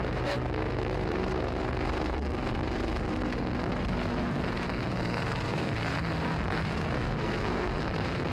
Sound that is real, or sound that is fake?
fake